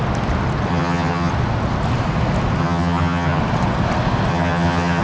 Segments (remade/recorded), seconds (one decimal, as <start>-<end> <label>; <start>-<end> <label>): 0.0-0.7 recorded; 0.7-1.3 remade; 1.3-2.6 recorded; 2.6-3.4 remade; 3.4-4.3 recorded; 4.3-5.0 remade